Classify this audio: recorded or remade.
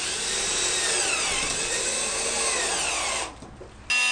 recorded